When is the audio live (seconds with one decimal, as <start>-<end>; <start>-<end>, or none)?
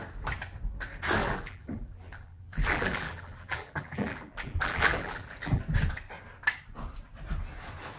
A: 0.0-1.2; 5.6-8.0